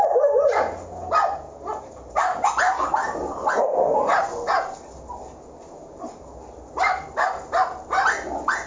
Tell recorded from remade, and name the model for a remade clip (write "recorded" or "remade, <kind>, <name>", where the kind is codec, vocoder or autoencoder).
recorded